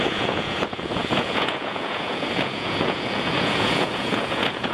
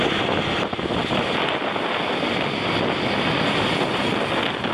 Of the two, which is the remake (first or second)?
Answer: first